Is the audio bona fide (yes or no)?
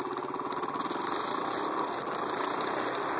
yes